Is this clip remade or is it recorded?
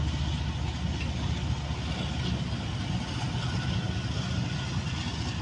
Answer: recorded